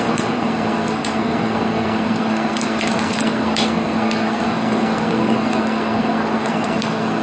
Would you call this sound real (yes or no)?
no